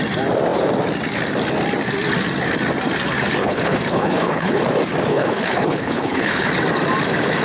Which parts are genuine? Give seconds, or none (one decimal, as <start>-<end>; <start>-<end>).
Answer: 0.0-3.4; 4.6-5.1; 6.5-7.4